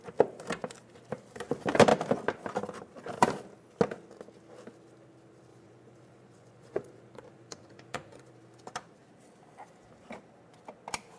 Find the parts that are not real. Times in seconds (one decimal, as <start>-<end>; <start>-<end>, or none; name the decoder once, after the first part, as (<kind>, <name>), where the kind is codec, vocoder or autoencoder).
5.5-8.3 (vocoder, Vocos)